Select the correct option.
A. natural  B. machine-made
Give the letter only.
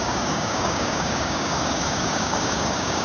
B